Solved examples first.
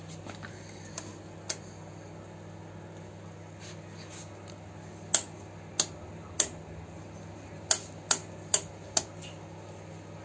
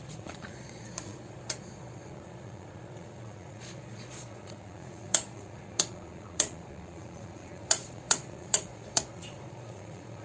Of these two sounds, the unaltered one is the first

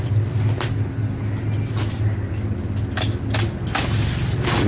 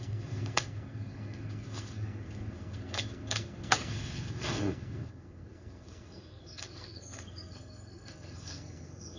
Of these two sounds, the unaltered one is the first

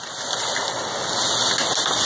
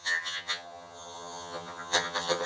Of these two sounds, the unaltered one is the first